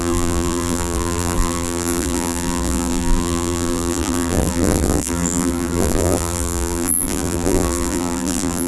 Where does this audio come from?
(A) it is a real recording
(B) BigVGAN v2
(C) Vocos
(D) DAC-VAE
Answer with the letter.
B